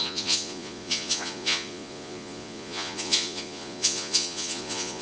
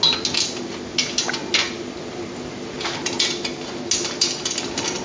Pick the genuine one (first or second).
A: second